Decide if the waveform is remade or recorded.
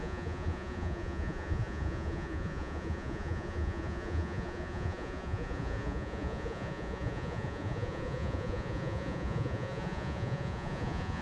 remade